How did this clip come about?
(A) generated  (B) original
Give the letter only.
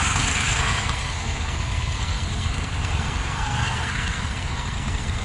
A